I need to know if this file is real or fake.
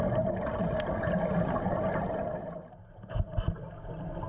real